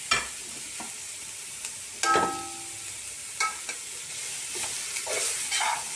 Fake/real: real